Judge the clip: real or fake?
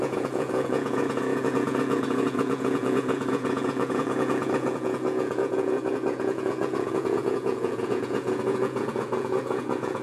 fake